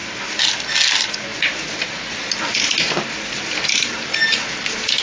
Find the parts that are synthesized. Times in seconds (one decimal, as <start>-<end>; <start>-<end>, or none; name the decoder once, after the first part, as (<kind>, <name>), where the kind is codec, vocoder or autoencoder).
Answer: 0.0-0.5 (vocoder, BigVGAN v2); 1.3-3.4